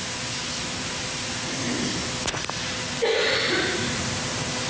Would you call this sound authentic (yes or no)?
yes